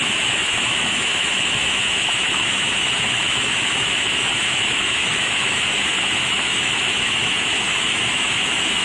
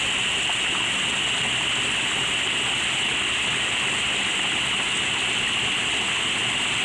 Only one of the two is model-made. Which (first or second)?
first